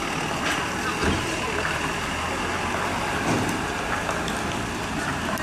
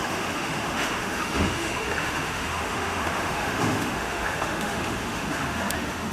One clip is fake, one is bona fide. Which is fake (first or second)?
second